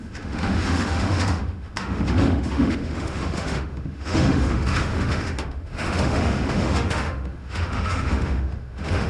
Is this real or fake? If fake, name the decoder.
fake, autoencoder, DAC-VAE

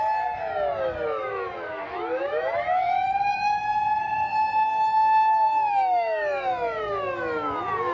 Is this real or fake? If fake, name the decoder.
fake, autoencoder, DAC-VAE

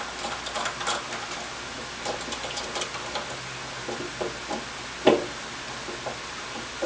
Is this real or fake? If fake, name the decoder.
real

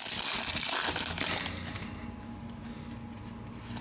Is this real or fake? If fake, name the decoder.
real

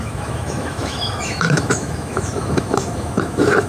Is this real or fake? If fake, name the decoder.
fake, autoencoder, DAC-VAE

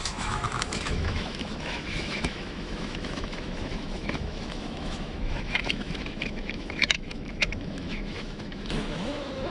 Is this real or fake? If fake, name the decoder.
fake, autoencoder, DAC-VAE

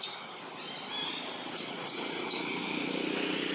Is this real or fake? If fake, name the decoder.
real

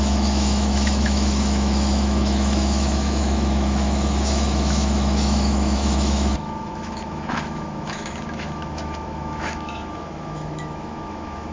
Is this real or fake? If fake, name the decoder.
fake, autoencoder, DAC-VAE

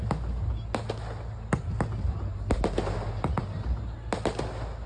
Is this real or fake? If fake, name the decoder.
real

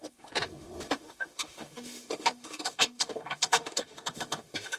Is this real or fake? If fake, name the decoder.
fake, autoencoder, DAC-VAE